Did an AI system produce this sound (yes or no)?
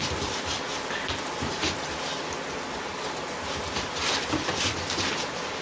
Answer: yes